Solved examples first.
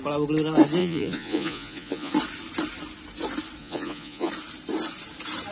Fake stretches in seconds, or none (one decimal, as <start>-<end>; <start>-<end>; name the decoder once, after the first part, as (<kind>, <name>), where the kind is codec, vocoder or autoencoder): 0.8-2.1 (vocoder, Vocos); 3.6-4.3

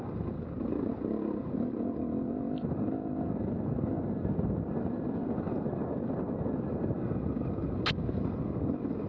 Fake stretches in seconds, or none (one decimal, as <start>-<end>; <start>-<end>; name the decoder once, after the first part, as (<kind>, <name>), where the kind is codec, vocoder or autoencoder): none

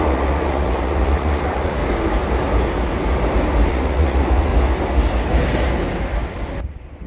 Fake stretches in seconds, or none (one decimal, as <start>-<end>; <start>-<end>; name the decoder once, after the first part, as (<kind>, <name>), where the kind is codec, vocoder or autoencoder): 0.0-1.8 (vocoder, Vocos); 3.7-4.5

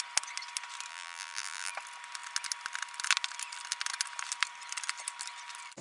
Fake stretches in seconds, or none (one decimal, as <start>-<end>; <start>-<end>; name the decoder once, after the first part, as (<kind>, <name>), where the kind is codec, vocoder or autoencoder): 0.9-1.7 (vocoder, BigVGAN v2)